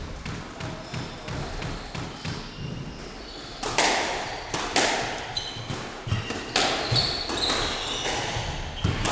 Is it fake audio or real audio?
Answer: real